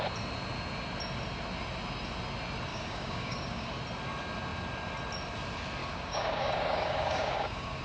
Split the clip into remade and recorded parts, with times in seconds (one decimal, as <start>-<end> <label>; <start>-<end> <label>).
0.0-2.7 recorded; 2.7-3.8 remade; 3.8-5.8 recorded; 5.8-7.8 remade